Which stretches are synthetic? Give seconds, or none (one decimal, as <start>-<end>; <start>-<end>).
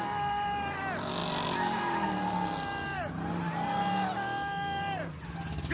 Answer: none